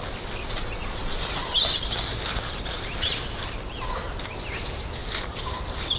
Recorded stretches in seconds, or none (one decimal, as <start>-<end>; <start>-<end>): 0.0-6.0

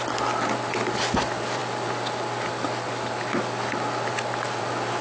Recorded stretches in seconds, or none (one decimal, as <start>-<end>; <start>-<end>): 0.0-5.0

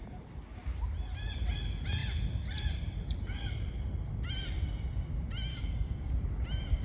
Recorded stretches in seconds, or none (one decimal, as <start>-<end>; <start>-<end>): 0.0-5.5; 6.1-6.8

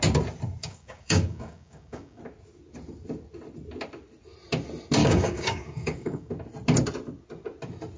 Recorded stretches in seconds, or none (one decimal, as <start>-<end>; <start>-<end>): 0.0-0.6; 2.2-5.0; 6.3-8.0

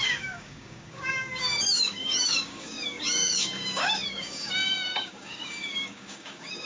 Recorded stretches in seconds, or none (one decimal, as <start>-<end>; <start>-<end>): none

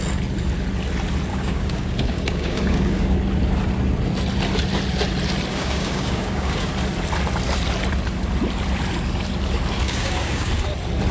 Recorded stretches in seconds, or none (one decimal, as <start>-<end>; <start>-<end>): 0.0-1.3; 3.2-5.5; 6.7-9.8; 10.5-11.1

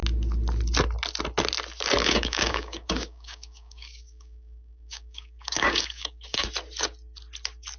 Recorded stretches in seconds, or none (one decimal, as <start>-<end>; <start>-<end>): 0.0-2.0; 6.5-7.8

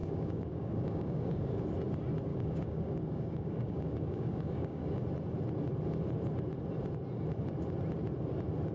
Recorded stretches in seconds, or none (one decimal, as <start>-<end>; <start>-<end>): 1.6-2.3; 4.8-8.7